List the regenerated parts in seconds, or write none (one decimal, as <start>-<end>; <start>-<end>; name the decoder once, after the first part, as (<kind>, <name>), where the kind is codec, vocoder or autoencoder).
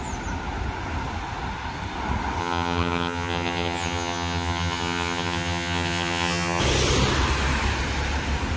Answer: 2.4-6.6 (vocoder, HiFi-GAN)